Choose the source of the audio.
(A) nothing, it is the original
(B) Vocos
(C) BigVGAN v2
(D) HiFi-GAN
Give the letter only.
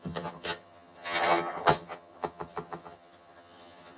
D